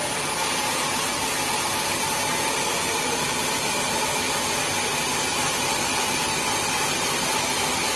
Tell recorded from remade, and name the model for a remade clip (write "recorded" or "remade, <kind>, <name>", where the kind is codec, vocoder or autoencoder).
recorded